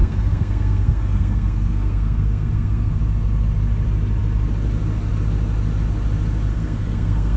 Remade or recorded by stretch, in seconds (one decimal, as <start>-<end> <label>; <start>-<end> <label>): 0.0-3.0 remade; 3.0-6.5 recorded; 6.5-7.4 remade

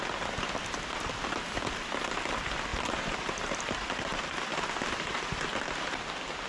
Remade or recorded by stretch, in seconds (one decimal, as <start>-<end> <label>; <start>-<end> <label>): 0.0-2.7 recorded; 2.7-3.6 remade; 3.6-6.5 recorded

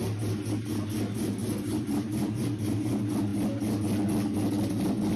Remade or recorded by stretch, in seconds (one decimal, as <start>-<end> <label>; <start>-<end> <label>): 0.0-1.4 recorded; 1.4-2.9 remade; 2.9-5.2 recorded

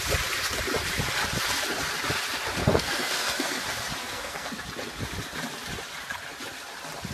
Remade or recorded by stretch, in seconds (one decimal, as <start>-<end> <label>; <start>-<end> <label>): 0.0-2.6 recorded; 2.6-3.6 remade; 3.6-4.0 recorded; 4.0-4.5 remade; 4.5-7.1 recorded

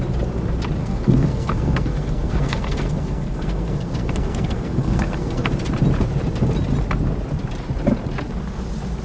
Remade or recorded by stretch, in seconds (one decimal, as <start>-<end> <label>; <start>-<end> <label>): 0.0-0.8 recorded; 0.8-5.5 remade; 5.5-9.0 recorded

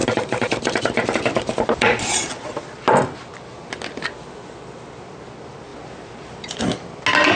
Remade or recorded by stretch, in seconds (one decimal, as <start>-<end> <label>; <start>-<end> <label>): 0.0-1.6 remade; 1.6-5.7 recorded; 5.7-6.6 remade; 6.6-7.4 recorded